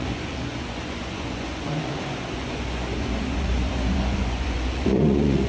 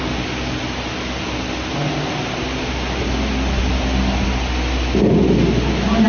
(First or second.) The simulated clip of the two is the first